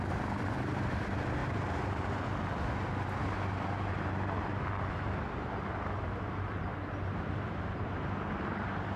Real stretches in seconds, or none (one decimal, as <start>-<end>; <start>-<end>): 1.4-6.0; 6.7-8.3